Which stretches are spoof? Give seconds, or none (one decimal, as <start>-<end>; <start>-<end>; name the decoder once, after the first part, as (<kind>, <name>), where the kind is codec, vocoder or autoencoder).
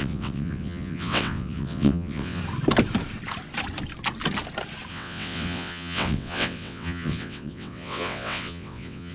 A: 0.0-2.4 (vocoder, WaveNeXt); 4.9-9.1